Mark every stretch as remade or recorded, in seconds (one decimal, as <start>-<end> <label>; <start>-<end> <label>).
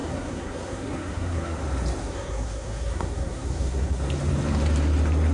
0.0-1.6 remade; 1.6-2.0 recorded; 2.0-4.0 remade; 4.0-5.3 recorded